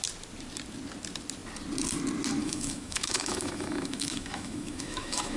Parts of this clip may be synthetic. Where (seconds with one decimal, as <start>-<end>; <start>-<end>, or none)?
2.4-5.4